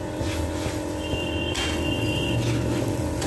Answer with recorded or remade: recorded